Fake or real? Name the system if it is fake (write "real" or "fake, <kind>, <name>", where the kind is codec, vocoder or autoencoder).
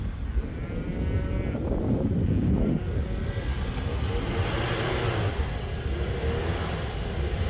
real